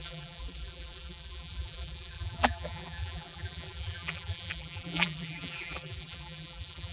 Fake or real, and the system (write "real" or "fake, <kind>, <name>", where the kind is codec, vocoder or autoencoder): fake, vocoder, BigVGAN v2